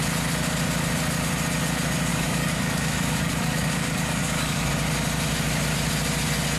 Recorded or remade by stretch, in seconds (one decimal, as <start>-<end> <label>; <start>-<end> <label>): 0.0-2.1 recorded; 2.1-4.7 remade; 4.7-6.6 recorded